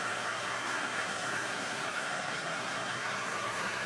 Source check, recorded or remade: remade